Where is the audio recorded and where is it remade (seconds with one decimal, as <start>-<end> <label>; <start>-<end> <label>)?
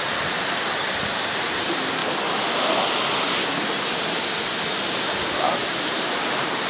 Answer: 0.0-2.0 remade; 2.0-4.7 recorded; 4.7-6.7 remade